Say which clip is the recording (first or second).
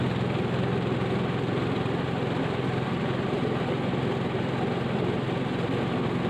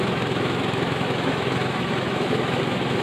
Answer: first